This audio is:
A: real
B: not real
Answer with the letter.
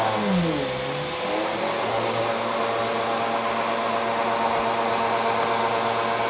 A